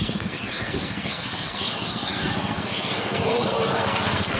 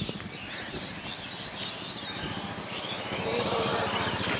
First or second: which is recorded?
second